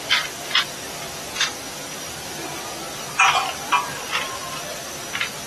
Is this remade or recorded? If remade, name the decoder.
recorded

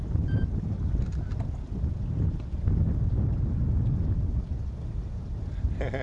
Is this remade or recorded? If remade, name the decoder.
recorded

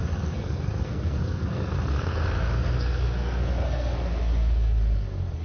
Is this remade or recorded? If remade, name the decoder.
remade, codec, SNAC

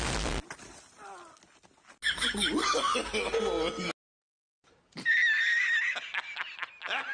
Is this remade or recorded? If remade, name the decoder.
recorded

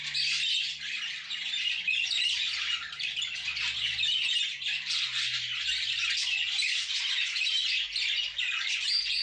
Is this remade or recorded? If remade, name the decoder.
recorded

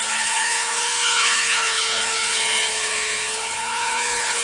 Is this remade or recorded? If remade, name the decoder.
remade, codec, HILCodec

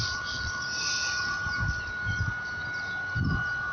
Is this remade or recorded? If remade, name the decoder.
recorded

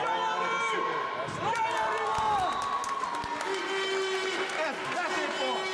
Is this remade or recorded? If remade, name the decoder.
recorded